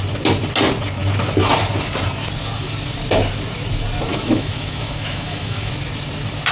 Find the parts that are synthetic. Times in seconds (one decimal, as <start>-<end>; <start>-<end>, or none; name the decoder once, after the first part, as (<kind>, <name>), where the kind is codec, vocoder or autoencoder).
4.1-5.7 (autoencoder, DAC-VAE)